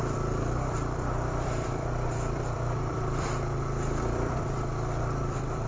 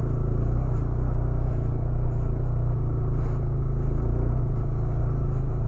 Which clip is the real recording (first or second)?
second